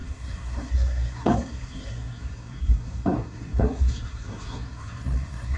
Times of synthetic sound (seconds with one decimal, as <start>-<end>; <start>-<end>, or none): 0.0-5.6